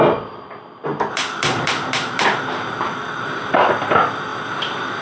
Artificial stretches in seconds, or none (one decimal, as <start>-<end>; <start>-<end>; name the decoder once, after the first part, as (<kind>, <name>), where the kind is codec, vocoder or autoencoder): 0.0-4.3 (vocoder, BigVGAN v2)